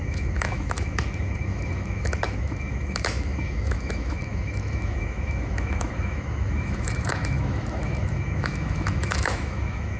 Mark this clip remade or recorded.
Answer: remade